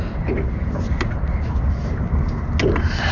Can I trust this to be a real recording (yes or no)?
yes